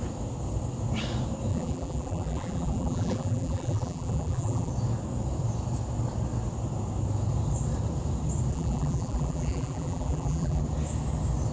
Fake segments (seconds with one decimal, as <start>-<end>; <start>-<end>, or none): 1.5-4.7; 8.5-10.6